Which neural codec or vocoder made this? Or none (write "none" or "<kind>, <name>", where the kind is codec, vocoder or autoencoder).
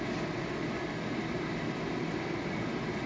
none